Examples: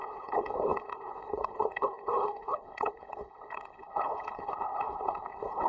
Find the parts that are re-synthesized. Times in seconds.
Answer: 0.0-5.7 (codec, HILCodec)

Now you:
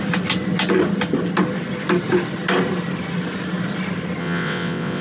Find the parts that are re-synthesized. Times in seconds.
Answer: 4.2-5.0 (vocoder, WaveNeXt)

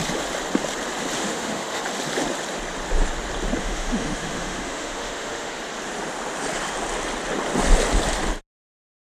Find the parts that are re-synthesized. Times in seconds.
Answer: 1.2-1.8 (autoencoder, DAC-VAE); 3.6-5.6

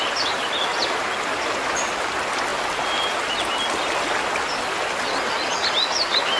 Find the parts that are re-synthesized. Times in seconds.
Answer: none

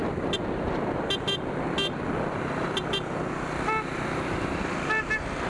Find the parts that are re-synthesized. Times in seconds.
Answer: none

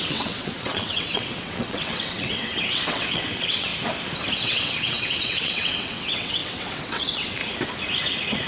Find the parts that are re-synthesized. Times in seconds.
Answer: 0.0-3.7 (vocoder, WaveNeXt); 4.4-7.4

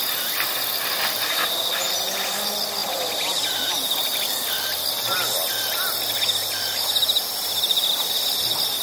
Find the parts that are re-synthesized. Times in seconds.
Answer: none

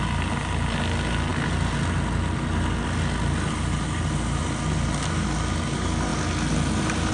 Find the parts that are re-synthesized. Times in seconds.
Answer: none